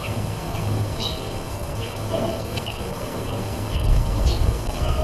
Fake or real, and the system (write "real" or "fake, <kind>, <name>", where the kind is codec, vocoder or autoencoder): fake, codec, SNAC